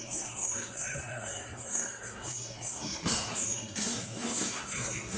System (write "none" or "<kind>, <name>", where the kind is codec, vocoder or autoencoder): codec, SNAC